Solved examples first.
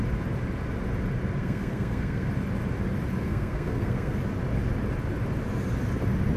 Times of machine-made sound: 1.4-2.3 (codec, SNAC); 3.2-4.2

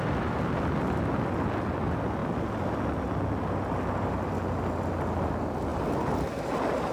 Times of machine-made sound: none

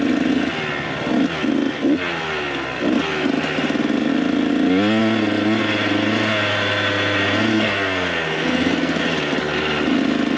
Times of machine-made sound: 7.5-9.0 (codec, SNAC)